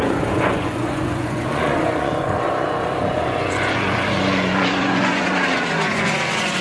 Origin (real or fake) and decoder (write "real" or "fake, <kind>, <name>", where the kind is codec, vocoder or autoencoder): fake, vocoder, Vocos